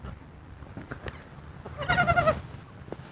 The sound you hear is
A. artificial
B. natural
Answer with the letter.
B